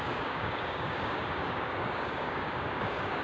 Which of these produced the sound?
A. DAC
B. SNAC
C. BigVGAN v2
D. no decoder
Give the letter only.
A